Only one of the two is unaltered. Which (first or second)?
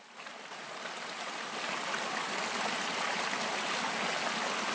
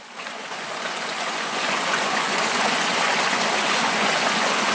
first